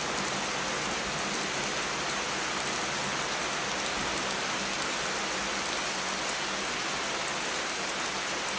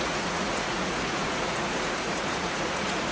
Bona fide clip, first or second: first